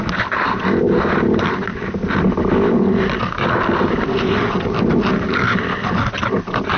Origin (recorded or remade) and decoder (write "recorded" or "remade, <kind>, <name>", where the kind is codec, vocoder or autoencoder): recorded